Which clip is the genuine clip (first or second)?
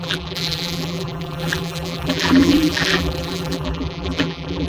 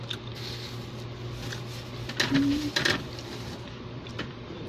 second